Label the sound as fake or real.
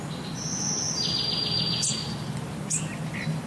real